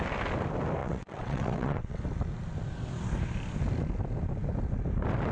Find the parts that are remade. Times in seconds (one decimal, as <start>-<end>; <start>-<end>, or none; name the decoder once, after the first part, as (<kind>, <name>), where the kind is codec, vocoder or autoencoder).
0.8-2.0 (vocoder, WaveNeXt)